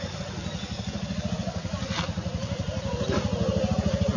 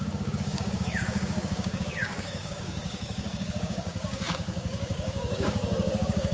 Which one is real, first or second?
first